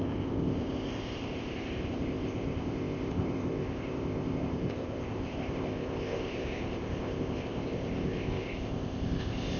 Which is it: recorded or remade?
remade